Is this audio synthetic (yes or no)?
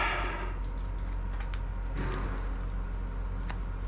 no